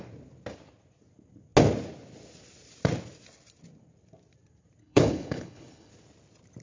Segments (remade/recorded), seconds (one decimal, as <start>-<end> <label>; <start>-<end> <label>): 0.0-4.8 recorded; 4.8-5.9 remade; 5.9-6.6 recorded